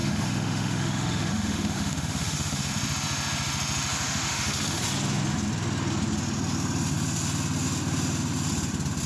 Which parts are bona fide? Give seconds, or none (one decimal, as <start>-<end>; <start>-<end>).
2.7-3.9; 4.8-9.1